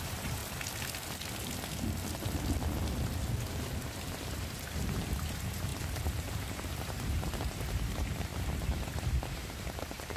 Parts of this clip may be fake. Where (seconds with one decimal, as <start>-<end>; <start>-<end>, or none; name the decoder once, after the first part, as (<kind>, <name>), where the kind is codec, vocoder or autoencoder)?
0.0-0.4 (vocoder, BigVGAN v2); 3.5-10.2